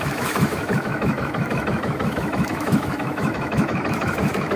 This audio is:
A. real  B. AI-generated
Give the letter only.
B